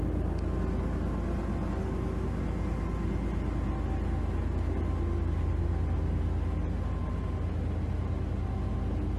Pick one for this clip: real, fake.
real